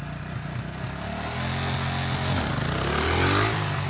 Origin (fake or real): real